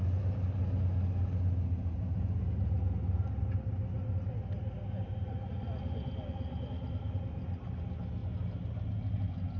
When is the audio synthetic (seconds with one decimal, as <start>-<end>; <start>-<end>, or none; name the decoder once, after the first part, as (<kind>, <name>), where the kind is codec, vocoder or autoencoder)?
none